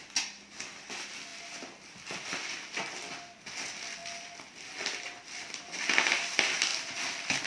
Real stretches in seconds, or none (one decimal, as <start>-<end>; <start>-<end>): 0.0-6.7